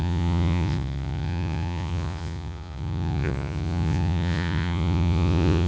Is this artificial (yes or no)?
yes